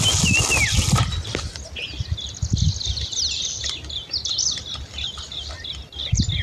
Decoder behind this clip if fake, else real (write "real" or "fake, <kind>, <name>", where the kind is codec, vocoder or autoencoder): real